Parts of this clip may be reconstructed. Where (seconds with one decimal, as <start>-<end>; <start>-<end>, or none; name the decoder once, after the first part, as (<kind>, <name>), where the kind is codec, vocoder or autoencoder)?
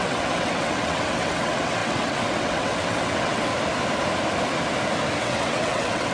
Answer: 0.0-3.5 (vocoder, WaveNeXt); 5.2-6.1